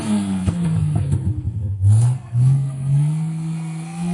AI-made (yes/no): yes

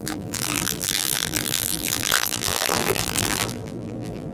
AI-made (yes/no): yes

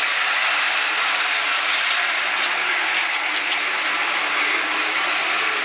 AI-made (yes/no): no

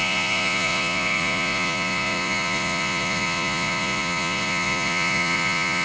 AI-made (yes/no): yes